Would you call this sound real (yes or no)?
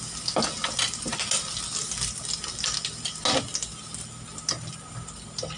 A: yes